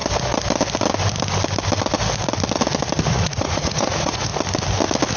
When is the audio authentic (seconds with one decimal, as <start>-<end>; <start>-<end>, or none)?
0.0-3.1; 4.3-5.2